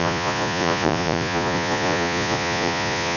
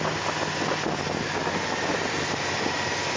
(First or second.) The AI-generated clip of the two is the first